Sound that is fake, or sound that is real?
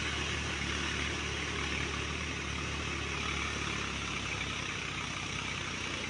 real